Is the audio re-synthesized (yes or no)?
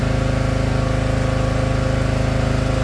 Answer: no